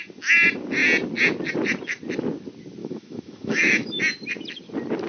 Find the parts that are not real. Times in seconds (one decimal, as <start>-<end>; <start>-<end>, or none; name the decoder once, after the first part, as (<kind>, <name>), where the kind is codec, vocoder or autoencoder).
2.8-4.0 (autoencoder, DAC-VAE)